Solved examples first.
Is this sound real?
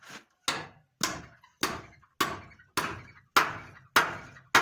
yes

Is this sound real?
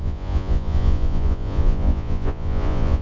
no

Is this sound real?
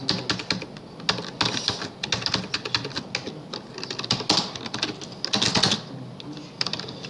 yes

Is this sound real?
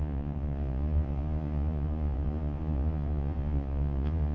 no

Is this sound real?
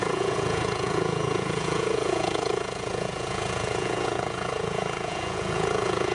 no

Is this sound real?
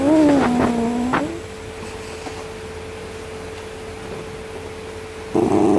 yes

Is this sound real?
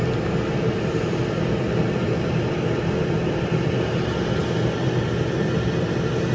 yes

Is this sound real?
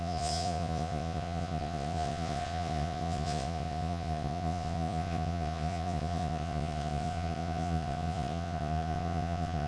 no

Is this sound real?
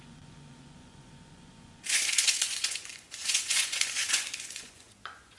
no